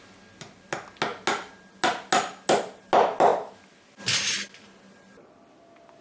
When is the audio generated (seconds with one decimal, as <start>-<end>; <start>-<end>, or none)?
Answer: none